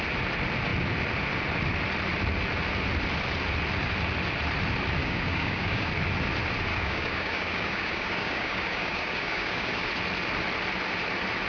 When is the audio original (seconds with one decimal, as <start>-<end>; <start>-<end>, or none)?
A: 0.0-5.0; 5.9-6.7; 9.9-11.5

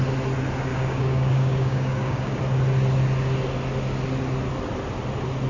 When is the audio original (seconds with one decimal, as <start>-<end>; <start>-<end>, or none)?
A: 0.0-0.7; 2.4-5.5

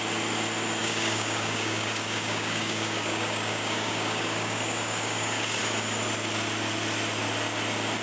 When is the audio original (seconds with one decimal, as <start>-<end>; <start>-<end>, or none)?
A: 0.0-0.8; 5.6-8.0

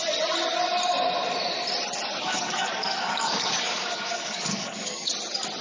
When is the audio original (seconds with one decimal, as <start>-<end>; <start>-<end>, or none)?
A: 0.0-2.2; 5.1-5.6

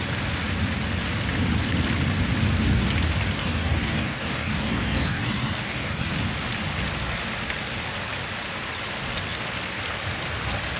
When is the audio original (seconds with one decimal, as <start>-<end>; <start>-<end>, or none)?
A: 0.0-3.4; 6.1-10.8

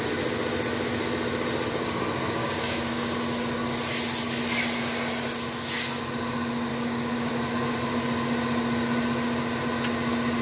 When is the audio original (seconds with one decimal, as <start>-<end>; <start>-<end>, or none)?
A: 0.0-2.4; 3.2-6.7; 7.3-10.4

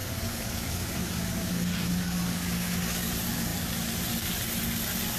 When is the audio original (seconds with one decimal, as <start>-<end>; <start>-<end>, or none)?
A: 3.1-5.2

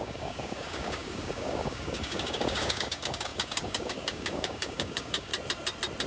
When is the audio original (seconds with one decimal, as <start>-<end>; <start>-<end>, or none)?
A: 5.3-6.1